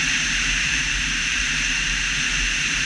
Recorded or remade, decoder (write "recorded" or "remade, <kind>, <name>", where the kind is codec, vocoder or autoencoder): remade, vocoder, BigVGAN v2